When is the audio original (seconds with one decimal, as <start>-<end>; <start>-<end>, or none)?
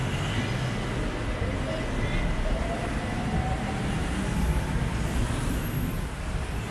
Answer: 0.0-6.7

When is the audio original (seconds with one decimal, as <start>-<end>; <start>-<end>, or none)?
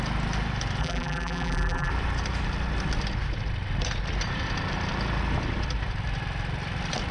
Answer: 0.0-0.8; 1.9-7.1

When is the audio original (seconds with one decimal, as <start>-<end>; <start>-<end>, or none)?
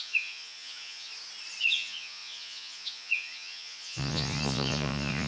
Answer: 1.1-1.6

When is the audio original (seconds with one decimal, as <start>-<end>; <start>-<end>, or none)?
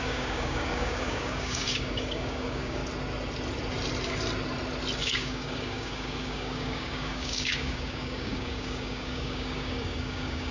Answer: 2.8-5.0